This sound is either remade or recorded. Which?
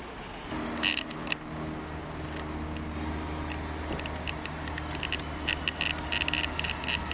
recorded